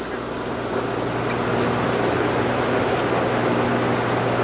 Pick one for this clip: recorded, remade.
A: recorded